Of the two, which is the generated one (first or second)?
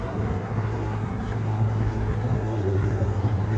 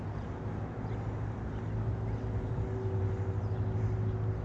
first